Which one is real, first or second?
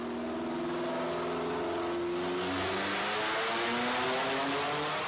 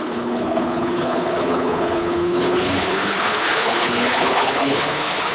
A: first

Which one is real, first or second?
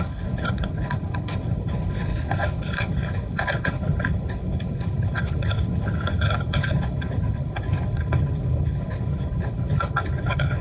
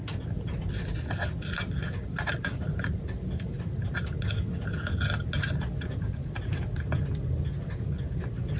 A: second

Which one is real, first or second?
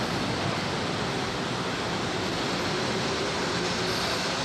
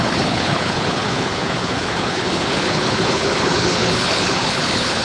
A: first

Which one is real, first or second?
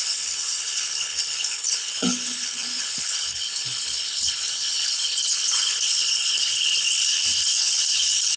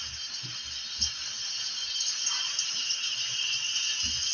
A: second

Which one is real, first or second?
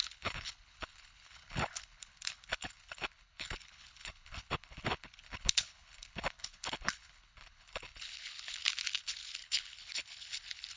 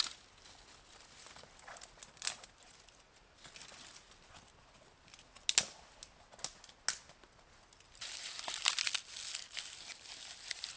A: second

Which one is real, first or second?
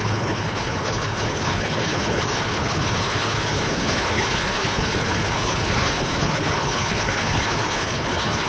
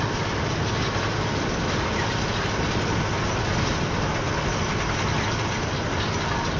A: second